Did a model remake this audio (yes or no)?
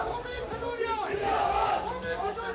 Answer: yes